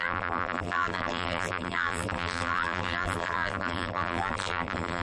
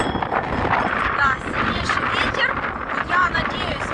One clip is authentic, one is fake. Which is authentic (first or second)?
second